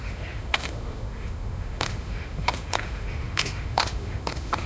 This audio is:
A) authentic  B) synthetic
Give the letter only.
B